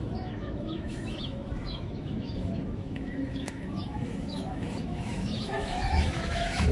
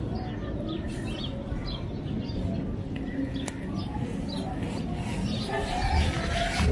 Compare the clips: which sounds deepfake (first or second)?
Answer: first